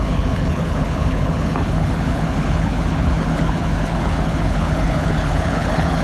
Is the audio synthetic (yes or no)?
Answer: yes